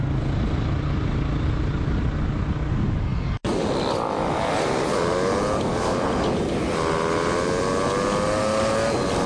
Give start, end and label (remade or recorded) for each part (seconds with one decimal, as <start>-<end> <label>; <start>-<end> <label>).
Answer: 0.0-9.3 recorded